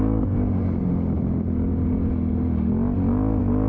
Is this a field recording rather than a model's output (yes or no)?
yes